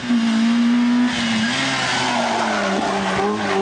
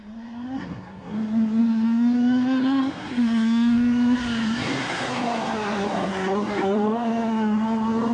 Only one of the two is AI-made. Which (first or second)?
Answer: second